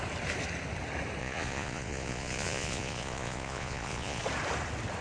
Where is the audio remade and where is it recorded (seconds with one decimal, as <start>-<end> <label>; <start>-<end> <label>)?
0.0-1.2 recorded; 1.2-4.2 remade; 4.2-5.0 recorded